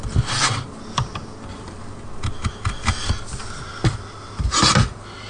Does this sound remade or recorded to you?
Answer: recorded